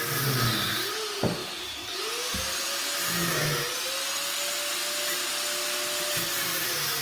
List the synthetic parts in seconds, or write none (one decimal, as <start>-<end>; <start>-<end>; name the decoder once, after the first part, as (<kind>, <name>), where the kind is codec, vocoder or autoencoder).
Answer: 1.4-2.0 (vocoder, BigVGAN v2)